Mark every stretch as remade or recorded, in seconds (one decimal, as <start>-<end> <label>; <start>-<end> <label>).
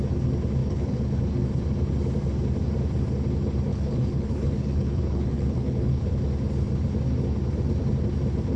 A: 0.0-0.6 recorded; 0.6-1.2 remade; 1.2-3.7 recorded; 3.7-6.2 remade; 6.2-8.6 recorded